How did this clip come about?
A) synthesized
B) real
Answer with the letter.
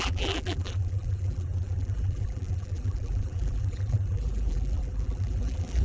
A